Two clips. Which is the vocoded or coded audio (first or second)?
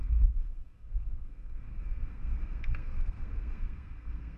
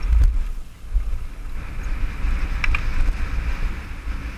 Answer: first